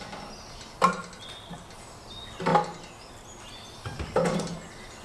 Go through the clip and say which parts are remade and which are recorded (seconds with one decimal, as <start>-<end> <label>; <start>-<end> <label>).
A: 0.0-5.0 recorded